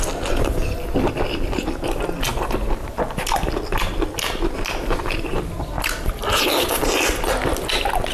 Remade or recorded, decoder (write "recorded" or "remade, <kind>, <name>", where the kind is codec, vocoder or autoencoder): recorded